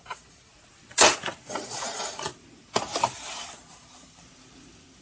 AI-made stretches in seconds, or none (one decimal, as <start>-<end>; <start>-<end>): 0.0-0.5; 1.5-2.3